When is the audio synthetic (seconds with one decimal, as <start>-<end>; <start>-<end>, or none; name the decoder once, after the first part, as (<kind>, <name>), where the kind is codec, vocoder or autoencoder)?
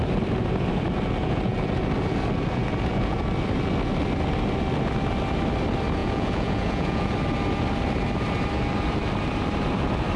6.0-7.1 (vocoder, Vocos)